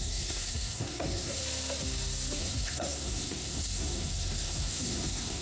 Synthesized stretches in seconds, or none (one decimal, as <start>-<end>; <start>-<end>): 0.0-1.4; 2.4-5.4